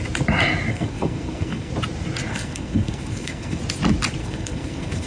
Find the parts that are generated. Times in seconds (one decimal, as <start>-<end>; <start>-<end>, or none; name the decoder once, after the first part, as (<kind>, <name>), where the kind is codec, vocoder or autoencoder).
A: 0.7-1.7 (codec, SNAC); 2.3-3.6; 4.2-5.1